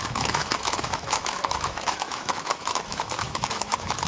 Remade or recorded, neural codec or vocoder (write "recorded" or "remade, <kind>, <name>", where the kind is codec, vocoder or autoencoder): remade, autoencoder, DAC-VAE